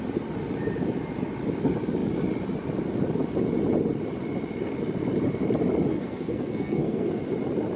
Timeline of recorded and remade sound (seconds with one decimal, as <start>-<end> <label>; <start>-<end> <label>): 0.0-5.9 recorded; 5.9-7.2 remade; 7.2-7.8 recorded